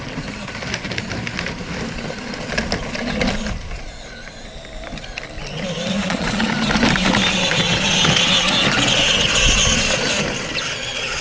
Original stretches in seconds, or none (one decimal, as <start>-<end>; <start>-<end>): 0.0-6.0; 6.5-11.2